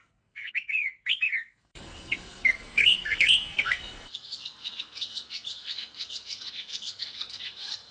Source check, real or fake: fake